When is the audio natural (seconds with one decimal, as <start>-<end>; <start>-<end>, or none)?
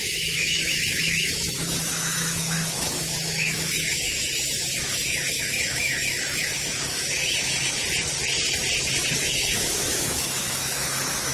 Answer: 7.8-9.2